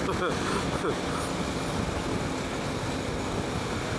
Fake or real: real